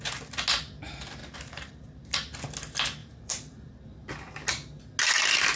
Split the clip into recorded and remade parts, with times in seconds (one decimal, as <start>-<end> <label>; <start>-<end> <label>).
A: 0.0-1.2 recorded; 1.2-2.4 remade; 2.4-3.0 recorded; 3.0-3.7 remade; 3.7-5.6 recorded